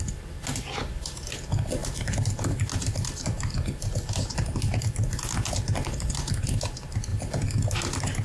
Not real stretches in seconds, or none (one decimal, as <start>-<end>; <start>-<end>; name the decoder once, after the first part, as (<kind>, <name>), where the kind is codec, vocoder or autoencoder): none